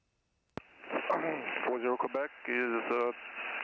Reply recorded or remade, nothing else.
recorded